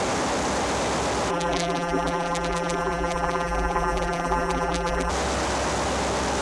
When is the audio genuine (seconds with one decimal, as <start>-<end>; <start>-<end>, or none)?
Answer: 0.0-1.3; 5.1-6.4

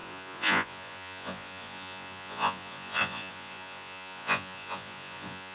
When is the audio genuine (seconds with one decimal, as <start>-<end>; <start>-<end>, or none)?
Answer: none

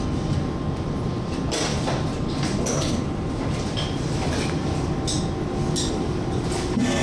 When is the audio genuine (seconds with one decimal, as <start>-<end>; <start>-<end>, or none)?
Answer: 0.0-7.0